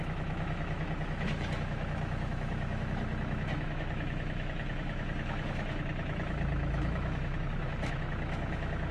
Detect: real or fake fake